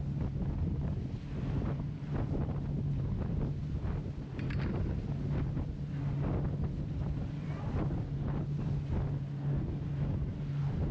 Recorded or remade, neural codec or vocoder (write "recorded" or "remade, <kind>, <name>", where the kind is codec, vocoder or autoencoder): recorded